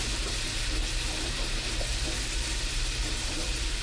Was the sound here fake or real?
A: fake